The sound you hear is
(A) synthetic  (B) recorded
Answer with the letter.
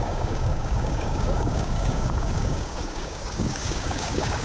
A